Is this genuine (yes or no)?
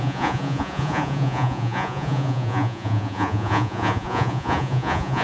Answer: no